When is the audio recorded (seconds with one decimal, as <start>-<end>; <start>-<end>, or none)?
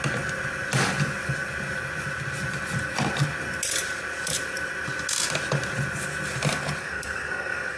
0.0-6.8